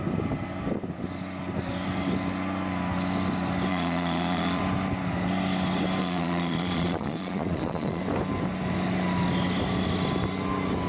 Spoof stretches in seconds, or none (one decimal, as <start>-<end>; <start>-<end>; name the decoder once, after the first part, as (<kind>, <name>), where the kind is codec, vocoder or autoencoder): 3.7-4.6 (vocoder, Vocos); 6.0-8.0